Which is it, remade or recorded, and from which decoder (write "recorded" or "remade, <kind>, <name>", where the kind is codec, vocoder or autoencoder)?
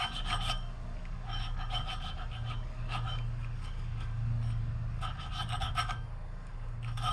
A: remade, codec, DAC